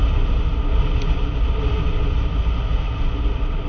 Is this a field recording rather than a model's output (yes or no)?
yes